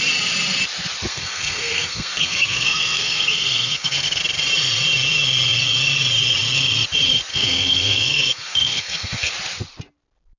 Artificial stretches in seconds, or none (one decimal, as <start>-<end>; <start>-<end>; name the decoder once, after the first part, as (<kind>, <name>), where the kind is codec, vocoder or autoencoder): 1.1-4.2 (codec, SNAC); 7.3-9.3